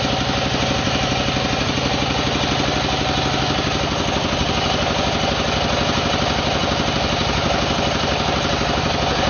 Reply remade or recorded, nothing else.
recorded